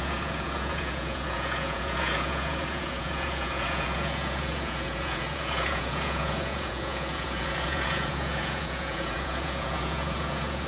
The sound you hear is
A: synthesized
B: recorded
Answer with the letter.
A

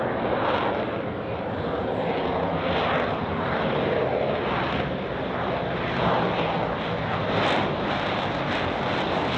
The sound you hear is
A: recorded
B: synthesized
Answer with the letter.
A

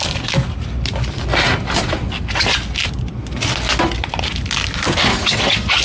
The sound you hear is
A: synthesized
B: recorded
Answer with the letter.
B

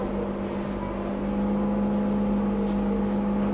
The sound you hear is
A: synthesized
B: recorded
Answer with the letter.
B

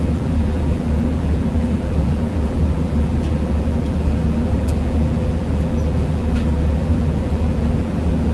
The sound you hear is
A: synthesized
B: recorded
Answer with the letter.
A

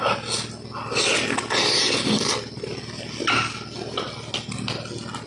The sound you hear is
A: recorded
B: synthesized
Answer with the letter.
A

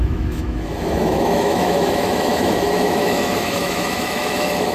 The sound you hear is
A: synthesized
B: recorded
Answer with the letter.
A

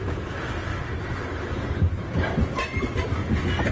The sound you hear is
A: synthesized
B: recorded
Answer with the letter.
B